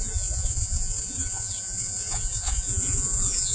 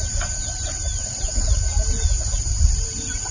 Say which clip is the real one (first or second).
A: second